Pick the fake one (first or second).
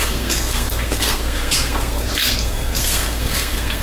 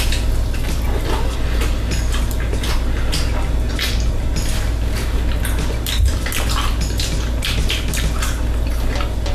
first